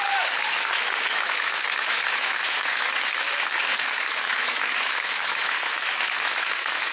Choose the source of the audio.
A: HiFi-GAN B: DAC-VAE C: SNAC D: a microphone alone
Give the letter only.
B